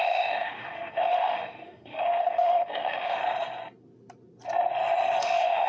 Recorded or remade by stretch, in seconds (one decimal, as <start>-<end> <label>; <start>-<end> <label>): 0.0-3.2 remade; 3.2-5.2 recorded; 5.2-5.7 remade